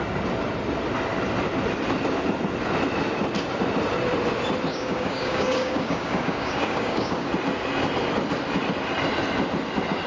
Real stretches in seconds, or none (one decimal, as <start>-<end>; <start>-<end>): 0.0-4.7; 7.3-10.1